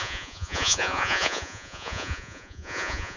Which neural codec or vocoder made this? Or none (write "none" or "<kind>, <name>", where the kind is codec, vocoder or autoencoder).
vocoder, Vocos